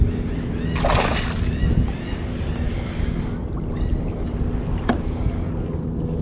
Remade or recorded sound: recorded